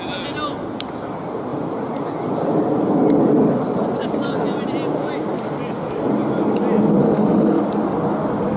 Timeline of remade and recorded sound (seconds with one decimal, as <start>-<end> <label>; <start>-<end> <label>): 0.0-7.0 recorded; 7.0-7.6 remade; 7.6-8.6 recorded

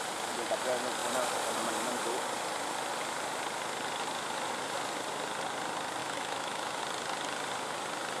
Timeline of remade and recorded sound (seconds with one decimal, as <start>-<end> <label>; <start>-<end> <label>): 0.0-6.0 recorded; 6.0-6.8 remade; 6.8-8.2 recorded